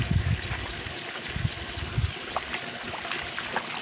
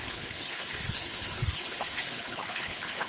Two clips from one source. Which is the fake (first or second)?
second